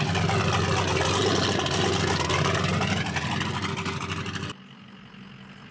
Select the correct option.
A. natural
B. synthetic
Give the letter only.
A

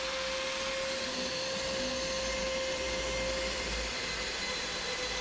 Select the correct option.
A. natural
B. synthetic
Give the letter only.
A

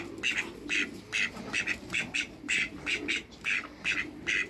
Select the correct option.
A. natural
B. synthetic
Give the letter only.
A